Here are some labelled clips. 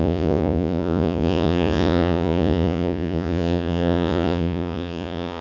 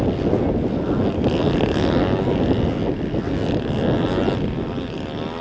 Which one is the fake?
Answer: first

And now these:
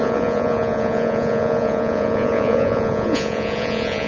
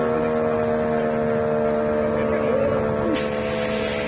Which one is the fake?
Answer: first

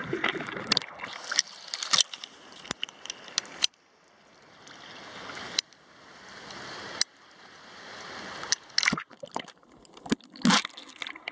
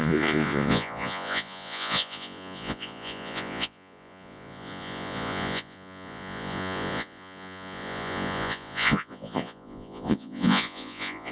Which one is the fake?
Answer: second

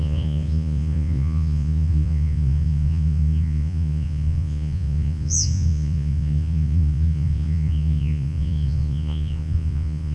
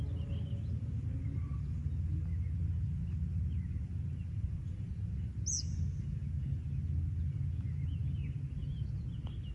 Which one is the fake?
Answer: first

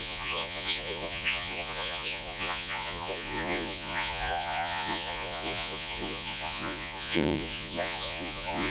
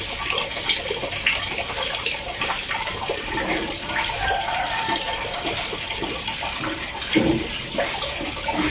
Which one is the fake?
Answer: first